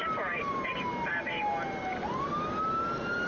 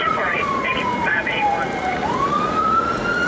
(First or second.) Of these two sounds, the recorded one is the first